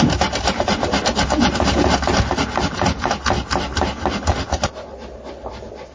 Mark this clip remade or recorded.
recorded